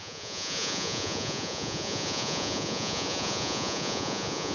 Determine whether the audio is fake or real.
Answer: fake